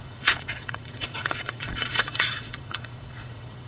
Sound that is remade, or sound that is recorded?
remade